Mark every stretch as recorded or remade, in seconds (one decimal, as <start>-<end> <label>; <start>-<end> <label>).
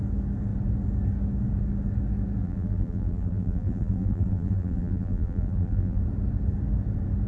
0.0-2.4 recorded; 2.4-6.0 remade; 6.0-7.3 recorded